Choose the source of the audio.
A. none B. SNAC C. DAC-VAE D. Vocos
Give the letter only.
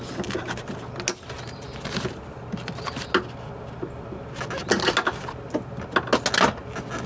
A